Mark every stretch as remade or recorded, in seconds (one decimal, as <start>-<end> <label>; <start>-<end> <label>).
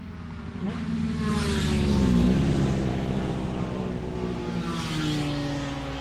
0.0-6.0 recorded